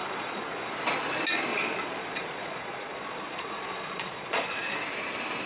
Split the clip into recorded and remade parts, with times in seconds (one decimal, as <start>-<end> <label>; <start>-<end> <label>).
0.0-0.7 remade; 0.7-1.5 recorded; 1.5-4.8 remade; 4.8-5.5 recorded